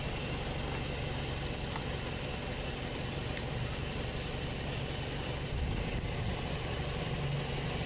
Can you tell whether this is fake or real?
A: real